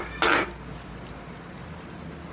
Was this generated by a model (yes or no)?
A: no